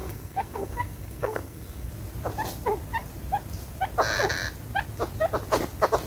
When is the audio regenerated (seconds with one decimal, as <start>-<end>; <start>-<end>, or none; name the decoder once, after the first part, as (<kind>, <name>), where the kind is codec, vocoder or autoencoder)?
0.0-1.9 (codec, SNAC)